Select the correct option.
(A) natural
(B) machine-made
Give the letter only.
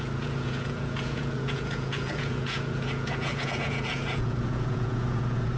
B